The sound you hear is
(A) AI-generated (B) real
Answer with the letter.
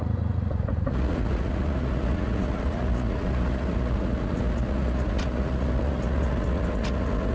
A